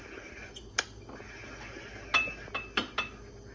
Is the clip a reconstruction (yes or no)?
no